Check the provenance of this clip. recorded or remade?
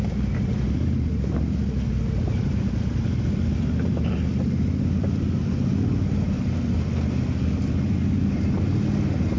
recorded